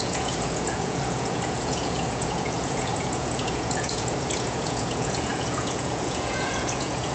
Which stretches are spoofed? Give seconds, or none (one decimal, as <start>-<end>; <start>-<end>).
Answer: 0.0-7.1